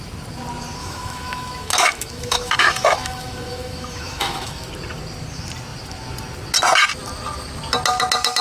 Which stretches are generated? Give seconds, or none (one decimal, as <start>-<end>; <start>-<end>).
0.8-4.7